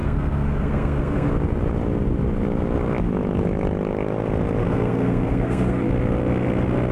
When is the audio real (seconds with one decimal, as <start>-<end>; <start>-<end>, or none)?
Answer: 1.3-4.6; 5.9-6.9